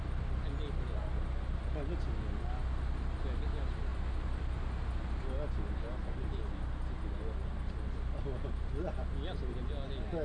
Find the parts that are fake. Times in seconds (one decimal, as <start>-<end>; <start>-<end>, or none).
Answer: none